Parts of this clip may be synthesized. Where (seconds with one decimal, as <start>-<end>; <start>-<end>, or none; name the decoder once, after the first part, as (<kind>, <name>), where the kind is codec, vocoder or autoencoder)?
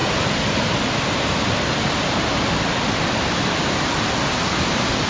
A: none